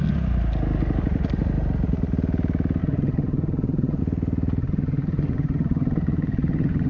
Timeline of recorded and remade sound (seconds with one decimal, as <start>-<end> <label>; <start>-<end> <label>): 0.0-2.8 recorded; 2.8-4.0 remade; 4.0-4.6 recorded; 4.6-6.9 remade